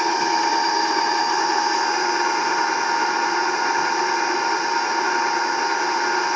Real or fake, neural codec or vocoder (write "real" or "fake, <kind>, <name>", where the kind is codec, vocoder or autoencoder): fake, vocoder, BigVGAN v2